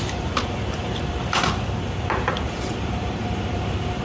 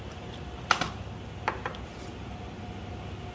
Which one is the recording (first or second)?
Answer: second